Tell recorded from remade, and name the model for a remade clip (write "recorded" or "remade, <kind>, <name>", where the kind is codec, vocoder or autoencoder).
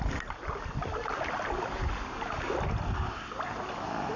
recorded